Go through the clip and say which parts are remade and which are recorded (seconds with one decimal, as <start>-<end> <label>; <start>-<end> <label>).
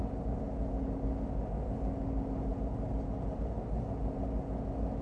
0.0-5.0 recorded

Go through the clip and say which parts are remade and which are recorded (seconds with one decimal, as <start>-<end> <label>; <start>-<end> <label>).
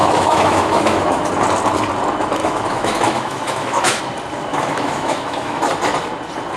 0.0-1.3 remade; 1.3-2.4 recorded; 2.4-4.0 remade; 4.0-4.5 recorded; 4.5-5.6 remade; 5.6-6.6 recorded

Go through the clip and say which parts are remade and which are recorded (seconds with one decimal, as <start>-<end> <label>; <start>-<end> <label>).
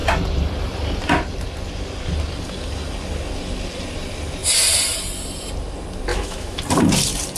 0.0-6.1 recorded; 6.1-6.6 remade; 6.6-7.4 recorded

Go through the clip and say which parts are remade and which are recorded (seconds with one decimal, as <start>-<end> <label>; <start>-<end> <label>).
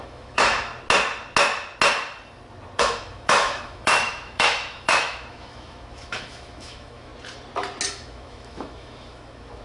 0.0-0.7 remade; 0.7-2.8 recorded; 2.8-7.1 remade; 7.1-7.9 recorded; 7.9-9.6 remade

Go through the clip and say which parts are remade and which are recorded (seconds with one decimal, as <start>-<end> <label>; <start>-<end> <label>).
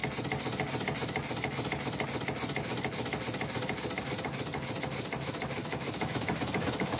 0.0-5.6 recorded; 5.6-7.0 remade